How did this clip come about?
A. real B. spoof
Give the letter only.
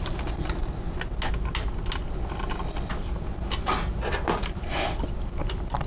A